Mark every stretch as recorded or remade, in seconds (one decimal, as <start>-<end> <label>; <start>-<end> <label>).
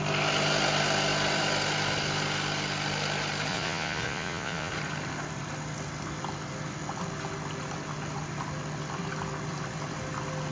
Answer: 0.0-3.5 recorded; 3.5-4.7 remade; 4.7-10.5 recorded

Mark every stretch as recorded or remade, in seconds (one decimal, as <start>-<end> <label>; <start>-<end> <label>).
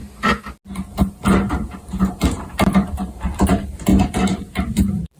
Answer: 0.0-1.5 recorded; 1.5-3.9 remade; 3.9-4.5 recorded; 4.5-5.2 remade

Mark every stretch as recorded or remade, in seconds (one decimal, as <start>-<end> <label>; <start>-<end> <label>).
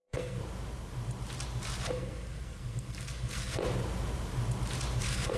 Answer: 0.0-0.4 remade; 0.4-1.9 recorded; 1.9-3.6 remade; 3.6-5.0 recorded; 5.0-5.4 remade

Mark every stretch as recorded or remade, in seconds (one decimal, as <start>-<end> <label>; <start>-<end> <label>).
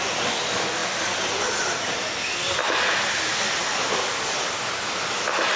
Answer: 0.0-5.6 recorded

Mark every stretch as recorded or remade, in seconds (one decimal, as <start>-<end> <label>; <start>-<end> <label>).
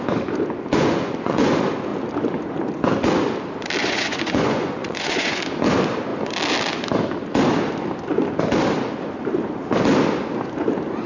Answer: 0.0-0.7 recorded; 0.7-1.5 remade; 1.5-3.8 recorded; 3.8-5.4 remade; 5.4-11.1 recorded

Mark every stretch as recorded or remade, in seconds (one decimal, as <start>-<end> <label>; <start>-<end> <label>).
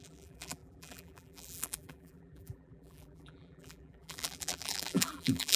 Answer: 0.0-5.6 remade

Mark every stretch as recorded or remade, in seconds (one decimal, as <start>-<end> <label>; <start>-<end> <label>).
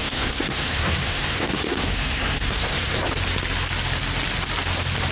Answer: 0.0-3.1 remade; 3.1-5.1 recorded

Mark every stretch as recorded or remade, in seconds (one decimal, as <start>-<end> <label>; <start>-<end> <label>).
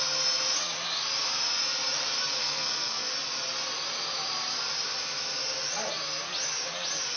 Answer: 0.0-2.4 recorded; 2.4-3.1 remade; 3.1-7.2 recorded